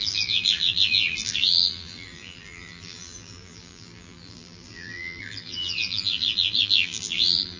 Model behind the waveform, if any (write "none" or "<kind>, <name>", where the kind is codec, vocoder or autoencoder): vocoder, BigVGAN v2